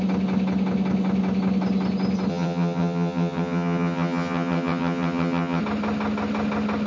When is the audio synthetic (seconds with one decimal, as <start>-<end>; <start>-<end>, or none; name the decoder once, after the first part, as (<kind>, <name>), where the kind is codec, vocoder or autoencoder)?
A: 2.3-5.6 (vocoder, HiFi-GAN)